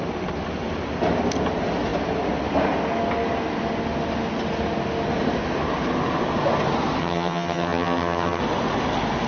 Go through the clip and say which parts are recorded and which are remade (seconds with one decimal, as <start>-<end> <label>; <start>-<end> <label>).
0.0-7.0 recorded; 7.0-8.4 remade; 8.4-9.3 recorded